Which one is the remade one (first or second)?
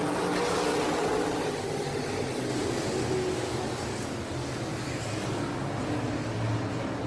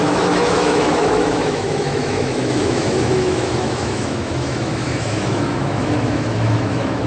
second